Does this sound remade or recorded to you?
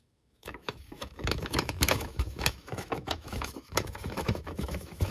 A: remade